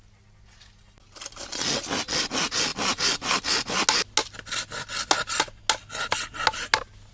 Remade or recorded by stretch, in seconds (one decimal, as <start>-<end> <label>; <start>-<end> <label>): 0.0-7.1 recorded